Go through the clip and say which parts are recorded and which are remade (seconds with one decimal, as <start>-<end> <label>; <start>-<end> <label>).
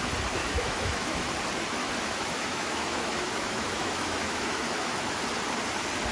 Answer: 0.0-0.4 recorded; 0.4-1.2 remade; 1.2-1.8 recorded; 1.8-5.2 remade; 5.2-6.1 recorded